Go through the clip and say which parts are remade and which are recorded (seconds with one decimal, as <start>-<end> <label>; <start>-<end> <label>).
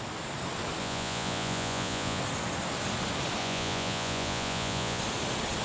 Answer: 0.0-0.8 recorded; 0.8-2.2 remade; 2.2-3.4 recorded; 3.4-5.0 remade; 5.0-5.6 recorded